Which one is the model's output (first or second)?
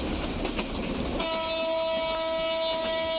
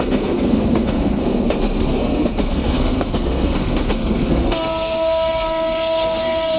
second